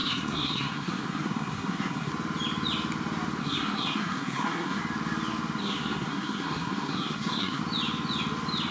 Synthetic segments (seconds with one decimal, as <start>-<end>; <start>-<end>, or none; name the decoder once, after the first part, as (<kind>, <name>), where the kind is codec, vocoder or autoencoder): 0.0-2.1 (codec, SNAC); 3.4-4.8; 5.6-7.6